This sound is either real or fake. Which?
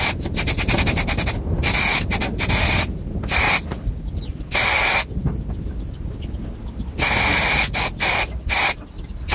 real